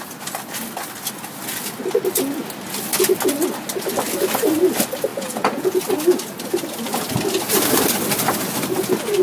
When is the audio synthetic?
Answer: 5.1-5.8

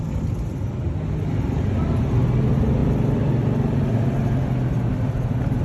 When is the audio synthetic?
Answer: none

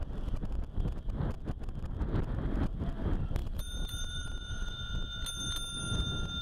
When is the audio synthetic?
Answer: 3.4-4.8